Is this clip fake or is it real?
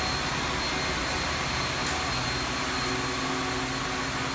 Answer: real